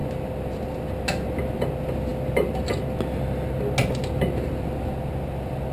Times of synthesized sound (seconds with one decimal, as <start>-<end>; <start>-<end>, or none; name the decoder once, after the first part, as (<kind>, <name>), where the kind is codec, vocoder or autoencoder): none